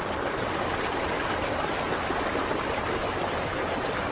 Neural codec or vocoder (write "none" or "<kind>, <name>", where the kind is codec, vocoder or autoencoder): none